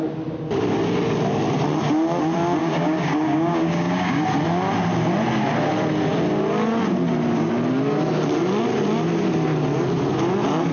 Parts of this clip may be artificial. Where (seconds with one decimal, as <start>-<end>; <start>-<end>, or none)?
2.6-4.2